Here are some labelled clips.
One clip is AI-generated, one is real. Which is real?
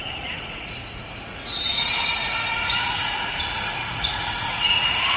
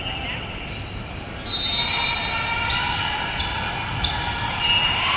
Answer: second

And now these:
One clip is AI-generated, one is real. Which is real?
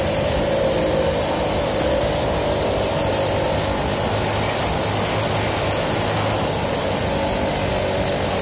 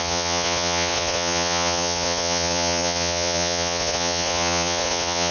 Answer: first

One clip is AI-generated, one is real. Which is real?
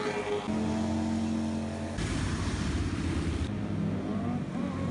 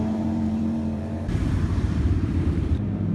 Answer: first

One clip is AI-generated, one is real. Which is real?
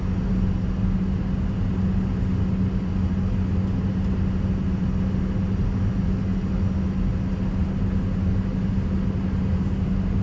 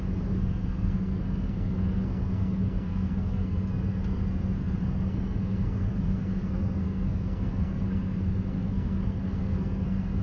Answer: first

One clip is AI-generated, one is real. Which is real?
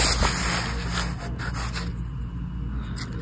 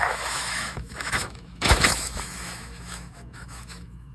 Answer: first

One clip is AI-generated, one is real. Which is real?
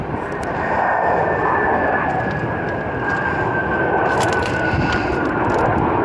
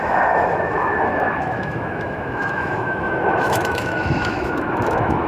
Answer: first